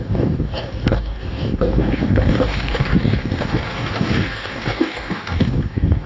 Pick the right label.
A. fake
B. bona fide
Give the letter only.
A